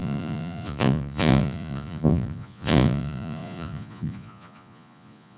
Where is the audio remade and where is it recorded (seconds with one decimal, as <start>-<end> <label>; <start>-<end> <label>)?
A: 0.0-5.4 remade